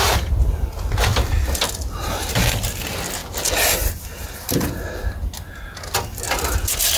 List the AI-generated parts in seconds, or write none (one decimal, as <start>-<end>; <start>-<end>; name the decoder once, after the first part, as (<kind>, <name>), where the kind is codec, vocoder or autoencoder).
none

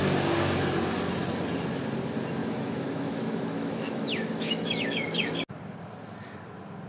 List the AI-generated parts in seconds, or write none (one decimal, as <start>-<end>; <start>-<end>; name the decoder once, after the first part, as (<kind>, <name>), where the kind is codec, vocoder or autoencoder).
2.4-5.3 (autoencoder, DAC-VAE)

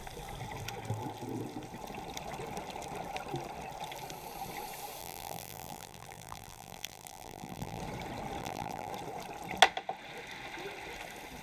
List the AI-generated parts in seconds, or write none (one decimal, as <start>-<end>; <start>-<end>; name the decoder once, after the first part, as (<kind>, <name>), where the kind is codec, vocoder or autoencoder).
5.0-7.8 (vocoder, BigVGAN v2); 8.4-8.9

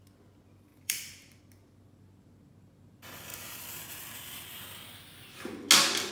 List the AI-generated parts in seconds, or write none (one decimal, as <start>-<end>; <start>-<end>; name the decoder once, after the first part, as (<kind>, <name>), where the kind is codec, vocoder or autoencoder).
0.7-1.4 (vocoder, BigVGAN v2)

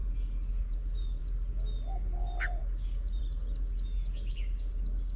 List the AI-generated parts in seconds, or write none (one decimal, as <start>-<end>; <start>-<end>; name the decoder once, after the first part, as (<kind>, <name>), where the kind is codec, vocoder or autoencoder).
none